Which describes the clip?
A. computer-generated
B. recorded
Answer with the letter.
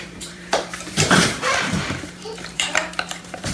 A